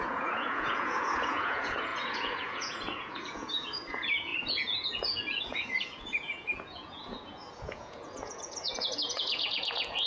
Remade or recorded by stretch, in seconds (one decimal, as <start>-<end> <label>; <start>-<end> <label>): 0.0-10.1 remade